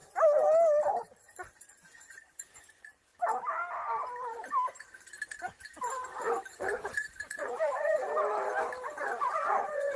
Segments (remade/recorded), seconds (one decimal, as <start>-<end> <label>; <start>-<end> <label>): 0.0-1.2 recorded; 1.2-3.1 remade; 3.1-6.5 recorded; 6.5-8.1 remade; 8.1-8.9 recorded; 8.9-10.0 remade